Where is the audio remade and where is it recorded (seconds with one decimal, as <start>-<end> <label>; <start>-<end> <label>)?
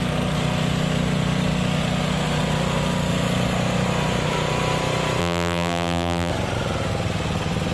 0.0-5.2 recorded; 5.2-6.3 remade; 6.3-7.7 recorded